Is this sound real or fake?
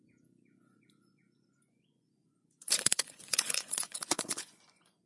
fake